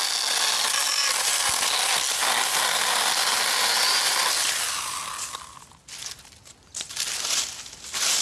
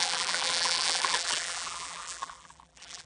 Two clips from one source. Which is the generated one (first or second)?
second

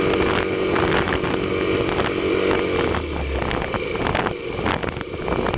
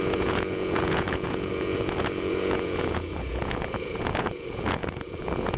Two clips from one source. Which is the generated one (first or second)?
second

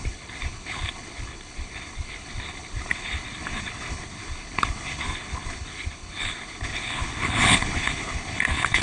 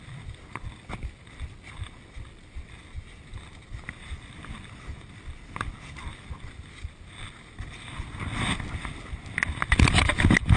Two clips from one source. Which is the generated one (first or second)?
first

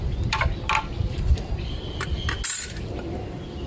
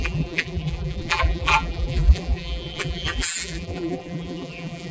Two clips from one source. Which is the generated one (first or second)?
second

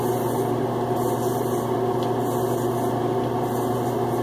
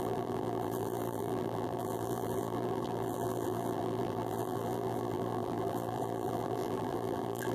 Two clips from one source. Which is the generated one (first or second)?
second